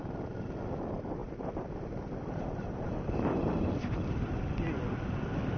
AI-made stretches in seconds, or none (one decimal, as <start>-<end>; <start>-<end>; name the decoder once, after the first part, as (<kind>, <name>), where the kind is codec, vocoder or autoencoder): none